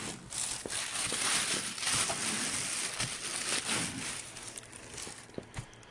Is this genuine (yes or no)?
yes